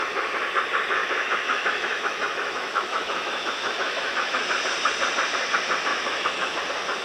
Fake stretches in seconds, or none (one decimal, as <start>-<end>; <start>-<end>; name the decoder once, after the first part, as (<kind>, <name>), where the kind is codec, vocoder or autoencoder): 1.0-4.5 (autoencoder, DAC-VAE); 5.9-6.6

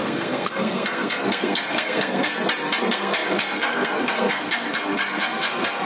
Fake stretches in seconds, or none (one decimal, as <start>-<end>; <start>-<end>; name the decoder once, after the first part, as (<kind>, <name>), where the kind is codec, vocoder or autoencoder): 0.0-2.3 (codec, SNAC); 2.8-5.9

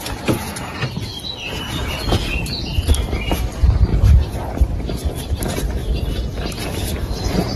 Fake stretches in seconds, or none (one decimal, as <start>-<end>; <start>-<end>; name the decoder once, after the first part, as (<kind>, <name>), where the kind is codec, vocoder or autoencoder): 1.1-2.0 (vocoder, BigVGAN v2); 3.9-5.1

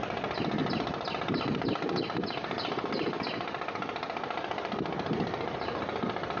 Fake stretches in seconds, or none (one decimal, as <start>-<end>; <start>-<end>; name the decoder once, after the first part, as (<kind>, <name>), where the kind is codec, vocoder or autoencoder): none

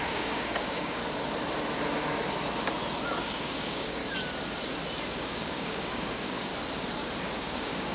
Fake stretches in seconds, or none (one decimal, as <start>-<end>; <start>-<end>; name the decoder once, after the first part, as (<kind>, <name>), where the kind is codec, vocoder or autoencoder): 0.0-1.0 (codec, DAC); 3.2-4.0; 5.1-6.5; 7.2-7.9

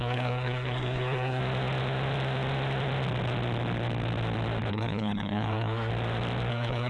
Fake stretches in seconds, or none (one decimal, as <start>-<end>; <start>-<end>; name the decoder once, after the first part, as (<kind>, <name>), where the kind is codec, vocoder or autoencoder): 0.0-1.4 (codec, SNAC); 4.7-5.9; 6.5-6.9

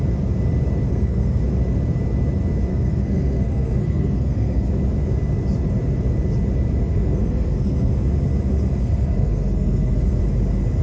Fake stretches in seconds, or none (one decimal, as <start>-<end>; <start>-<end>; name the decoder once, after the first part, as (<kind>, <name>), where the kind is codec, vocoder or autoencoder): 0.9-1.4 (codec, SNAC); 2.7-4.7; 6.9-7.9; 8.8-10.2